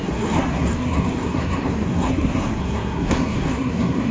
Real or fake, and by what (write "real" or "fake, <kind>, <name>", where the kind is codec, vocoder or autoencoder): fake, codec, SNAC